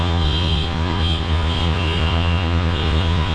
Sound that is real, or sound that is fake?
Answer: fake